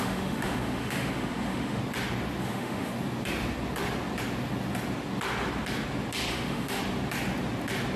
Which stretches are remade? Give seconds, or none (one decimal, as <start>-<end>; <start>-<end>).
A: 0.0-1.8; 2.4-2.9; 6.3-6.8